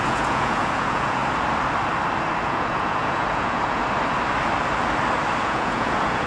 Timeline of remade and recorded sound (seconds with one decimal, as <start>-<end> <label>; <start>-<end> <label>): 0.0-1.2 remade; 1.2-2.4 recorded; 2.4-3.8 remade; 3.8-5.4 recorded; 5.4-6.3 remade